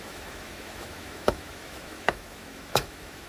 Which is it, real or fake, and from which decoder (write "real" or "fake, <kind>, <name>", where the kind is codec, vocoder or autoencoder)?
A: fake, autoencoder, DAC-VAE